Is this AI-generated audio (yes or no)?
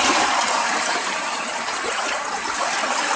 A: yes